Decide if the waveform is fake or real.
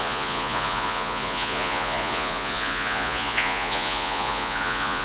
fake